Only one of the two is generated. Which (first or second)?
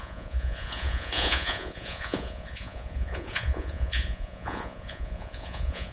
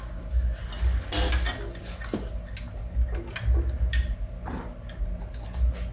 first